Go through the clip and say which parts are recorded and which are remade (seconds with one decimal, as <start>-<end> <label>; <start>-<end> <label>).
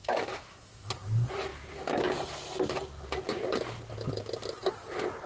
0.0-0.9 remade; 0.9-5.3 recorded